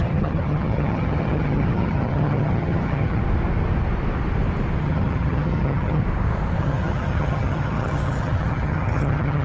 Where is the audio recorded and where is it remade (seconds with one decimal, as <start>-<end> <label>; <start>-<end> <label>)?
0.0-3.2 remade; 3.2-4.8 recorded; 4.8-6.0 remade; 6.0-6.6 recorded; 6.6-9.4 remade